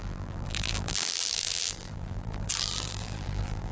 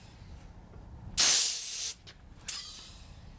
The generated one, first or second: first